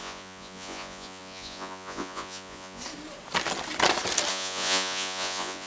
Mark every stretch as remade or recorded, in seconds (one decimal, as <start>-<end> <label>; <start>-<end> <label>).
0.0-2.8 remade; 2.8-4.3 recorded; 4.3-5.7 remade